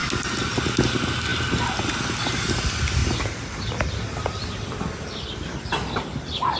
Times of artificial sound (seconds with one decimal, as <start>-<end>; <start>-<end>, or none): none